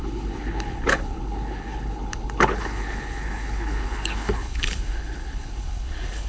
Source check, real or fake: fake